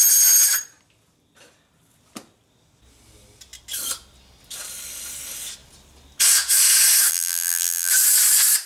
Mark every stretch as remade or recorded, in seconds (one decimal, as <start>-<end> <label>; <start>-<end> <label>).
0.0-7.1 recorded; 7.1-7.9 remade; 7.9-8.7 recorded